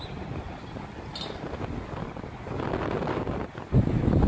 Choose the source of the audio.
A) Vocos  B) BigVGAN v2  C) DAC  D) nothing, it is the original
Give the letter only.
D